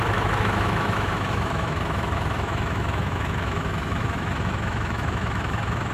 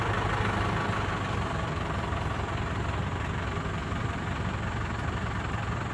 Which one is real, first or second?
second